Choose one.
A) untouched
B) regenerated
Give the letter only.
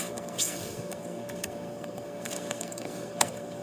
B